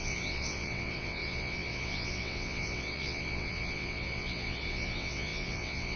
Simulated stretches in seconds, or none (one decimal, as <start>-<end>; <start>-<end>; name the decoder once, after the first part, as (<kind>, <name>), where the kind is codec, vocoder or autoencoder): 0.0-6.0 (vocoder, WaveNeXt)